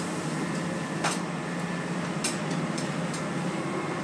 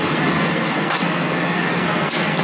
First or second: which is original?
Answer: first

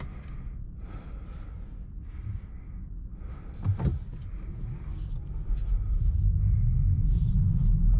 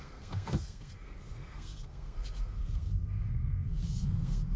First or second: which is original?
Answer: first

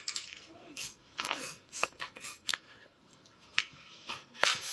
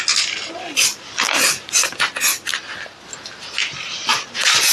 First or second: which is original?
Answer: second